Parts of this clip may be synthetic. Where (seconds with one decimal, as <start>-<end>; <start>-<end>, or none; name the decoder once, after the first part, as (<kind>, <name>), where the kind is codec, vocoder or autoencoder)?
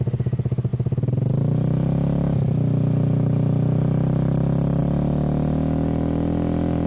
none